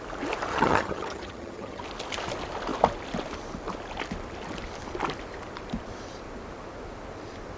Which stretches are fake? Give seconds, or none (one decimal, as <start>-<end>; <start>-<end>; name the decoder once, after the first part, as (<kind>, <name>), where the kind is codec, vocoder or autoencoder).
0.5-1.8 (vocoder, HiFi-GAN)

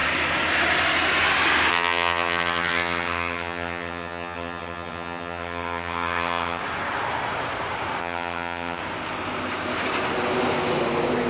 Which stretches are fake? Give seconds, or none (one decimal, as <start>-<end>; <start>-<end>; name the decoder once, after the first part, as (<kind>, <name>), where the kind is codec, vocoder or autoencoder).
1.7-6.6 (vocoder, HiFi-GAN); 8.0-8.8

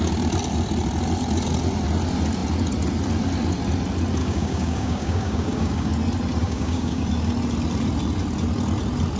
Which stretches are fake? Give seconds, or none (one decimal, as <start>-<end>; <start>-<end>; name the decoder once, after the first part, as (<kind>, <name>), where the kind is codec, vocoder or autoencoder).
4.2-5.9 (codec, DAC); 6.4-7.0

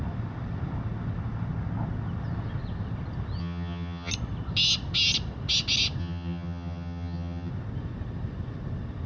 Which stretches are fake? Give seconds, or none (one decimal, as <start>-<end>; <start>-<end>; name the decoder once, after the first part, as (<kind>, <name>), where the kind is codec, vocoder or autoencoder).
3.4-4.1 (vocoder, HiFi-GAN); 6.0-7.5

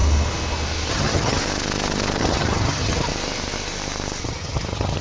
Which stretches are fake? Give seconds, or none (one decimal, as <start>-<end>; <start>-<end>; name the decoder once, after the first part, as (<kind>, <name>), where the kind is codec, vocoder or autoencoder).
0.9-1.4 (vocoder, HiFi-GAN); 2.2-3.1; 4.2-5.0

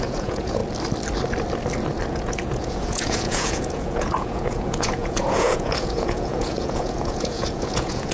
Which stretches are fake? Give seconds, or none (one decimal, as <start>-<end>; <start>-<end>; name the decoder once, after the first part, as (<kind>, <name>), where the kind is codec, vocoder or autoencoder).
0.0-0.6 (vocoder, Vocos); 2.1-8.1

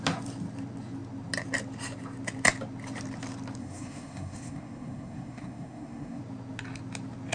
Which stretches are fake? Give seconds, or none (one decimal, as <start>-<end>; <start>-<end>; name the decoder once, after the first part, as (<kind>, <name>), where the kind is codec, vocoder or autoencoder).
3.6-6.2 (codec, SNAC)